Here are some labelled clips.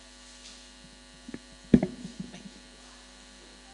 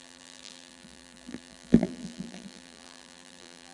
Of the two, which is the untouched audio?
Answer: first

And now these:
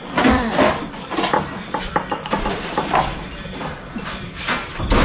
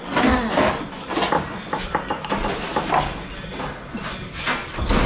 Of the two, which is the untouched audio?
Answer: second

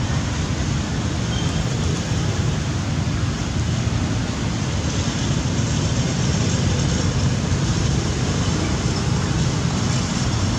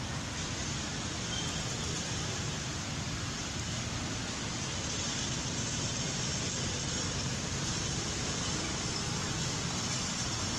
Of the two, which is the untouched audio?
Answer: second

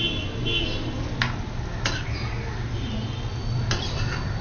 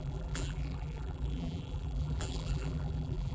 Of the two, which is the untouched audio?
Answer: first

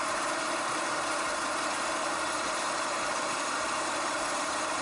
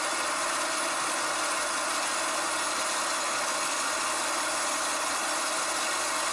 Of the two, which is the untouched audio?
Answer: second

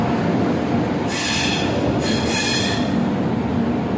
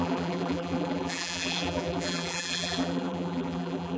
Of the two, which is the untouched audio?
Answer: first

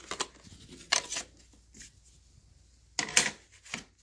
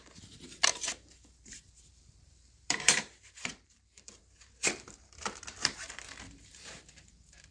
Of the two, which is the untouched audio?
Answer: first